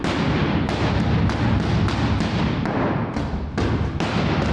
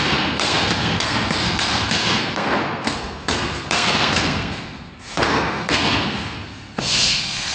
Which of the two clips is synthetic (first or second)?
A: second